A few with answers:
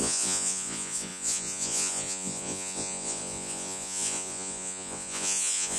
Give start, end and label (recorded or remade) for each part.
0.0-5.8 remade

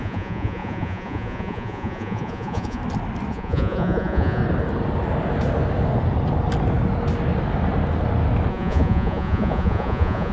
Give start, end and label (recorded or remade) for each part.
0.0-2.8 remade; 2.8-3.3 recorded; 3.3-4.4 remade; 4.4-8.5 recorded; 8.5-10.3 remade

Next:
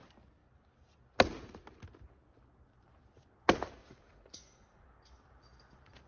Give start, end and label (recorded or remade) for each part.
0.0-3.8 recorded; 3.8-4.9 remade; 4.9-6.1 recorded

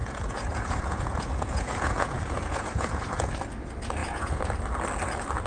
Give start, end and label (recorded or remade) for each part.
0.0-3.3 remade; 3.3-4.0 recorded; 4.0-4.5 remade; 4.5-5.5 recorded

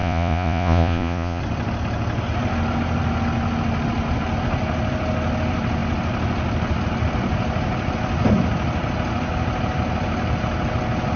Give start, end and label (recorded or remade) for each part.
0.0-1.4 remade; 1.4-11.2 recorded

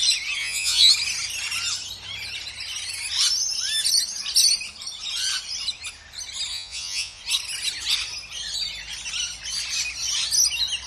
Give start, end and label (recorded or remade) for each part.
0.0-0.4 recorded; 0.4-0.9 remade; 0.9-6.5 recorded; 6.5-7.2 remade; 7.2-10.9 recorded

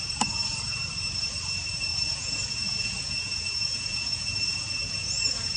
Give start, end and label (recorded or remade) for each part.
0.0-1.9 recorded; 1.9-5.6 remade

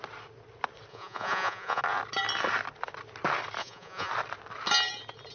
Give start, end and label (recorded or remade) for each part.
0.0-0.9 recorded; 0.9-1.8 remade; 1.8-3.6 recorded; 3.6-4.1 remade; 4.1-5.3 recorded